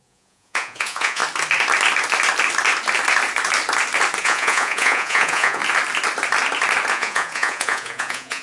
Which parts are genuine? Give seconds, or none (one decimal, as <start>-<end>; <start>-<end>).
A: 1.2-4.2; 5.6-6.9